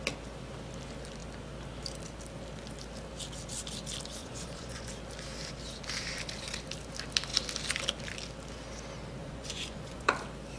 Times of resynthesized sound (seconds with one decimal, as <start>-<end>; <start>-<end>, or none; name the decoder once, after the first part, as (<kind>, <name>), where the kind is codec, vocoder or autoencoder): 4.2-4.9 (vocoder, Vocos); 9.2-10.1